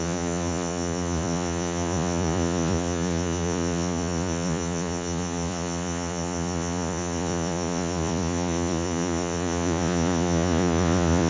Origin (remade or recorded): remade